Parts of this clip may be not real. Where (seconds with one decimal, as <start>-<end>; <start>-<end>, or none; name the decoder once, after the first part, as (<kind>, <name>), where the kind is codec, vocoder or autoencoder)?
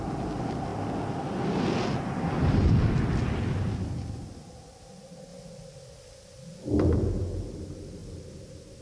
none